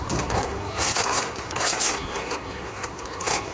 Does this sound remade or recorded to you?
remade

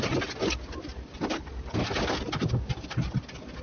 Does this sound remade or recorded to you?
recorded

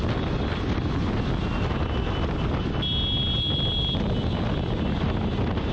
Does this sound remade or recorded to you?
recorded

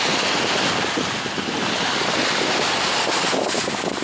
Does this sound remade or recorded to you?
recorded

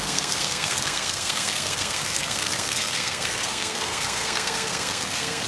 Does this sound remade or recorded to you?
remade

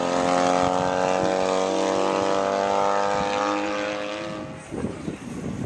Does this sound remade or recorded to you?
recorded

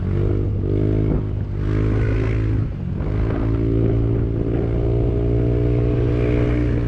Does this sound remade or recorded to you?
recorded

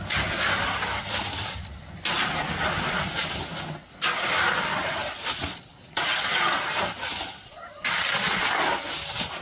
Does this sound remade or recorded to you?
recorded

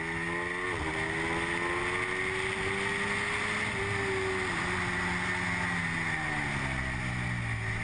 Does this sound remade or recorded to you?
recorded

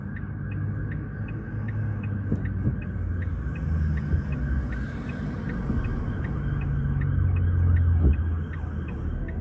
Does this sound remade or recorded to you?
recorded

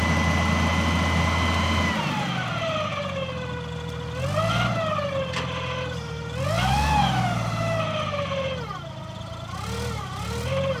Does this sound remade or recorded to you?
recorded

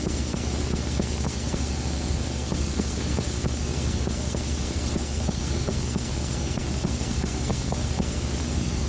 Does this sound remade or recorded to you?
remade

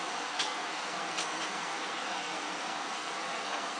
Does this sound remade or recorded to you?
remade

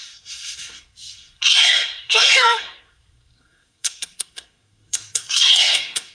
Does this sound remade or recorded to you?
remade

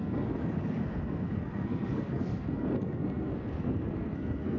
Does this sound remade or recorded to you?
remade